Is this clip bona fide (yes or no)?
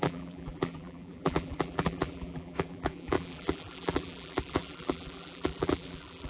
no